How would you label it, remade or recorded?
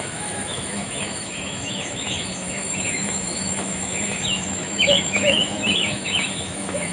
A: remade